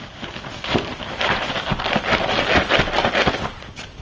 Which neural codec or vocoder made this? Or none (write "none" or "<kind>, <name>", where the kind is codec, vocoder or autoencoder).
vocoder, BigVGAN v2